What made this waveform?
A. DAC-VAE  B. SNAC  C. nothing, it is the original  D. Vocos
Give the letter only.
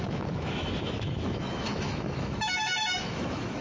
A